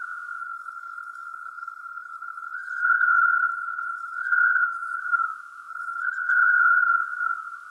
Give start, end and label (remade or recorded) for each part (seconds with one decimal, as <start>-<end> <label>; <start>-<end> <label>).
0.0-0.4 recorded; 0.4-5.0 remade; 5.0-5.7 recorded; 5.7-7.0 remade; 7.0-7.7 recorded